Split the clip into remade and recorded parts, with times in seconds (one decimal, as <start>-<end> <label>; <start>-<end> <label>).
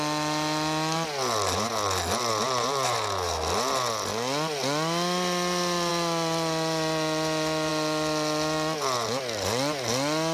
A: 0.0-10.3 recorded